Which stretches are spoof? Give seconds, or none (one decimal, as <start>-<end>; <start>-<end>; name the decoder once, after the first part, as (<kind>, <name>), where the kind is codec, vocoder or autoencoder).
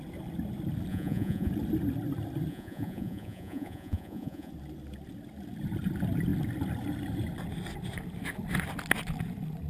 0.9-1.5 (vocoder, Vocos); 2.5-4.5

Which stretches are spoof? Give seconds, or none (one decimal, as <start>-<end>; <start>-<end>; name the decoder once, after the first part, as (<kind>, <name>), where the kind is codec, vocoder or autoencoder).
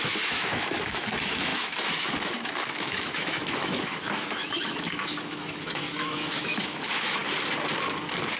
0.0-7.2 (autoencoder, DAC-VAE)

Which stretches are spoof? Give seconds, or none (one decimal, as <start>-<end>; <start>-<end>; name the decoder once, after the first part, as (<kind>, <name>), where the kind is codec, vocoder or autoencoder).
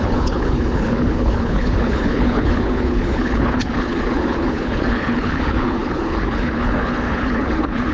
0.0-7.9 (codec, HILCodec)